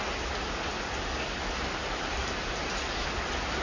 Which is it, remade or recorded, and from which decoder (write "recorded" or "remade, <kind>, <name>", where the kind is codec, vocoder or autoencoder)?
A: recorded